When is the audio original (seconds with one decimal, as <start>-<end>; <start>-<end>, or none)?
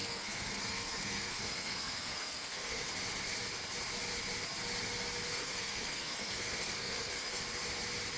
2.9-5.3; 7.4-8.2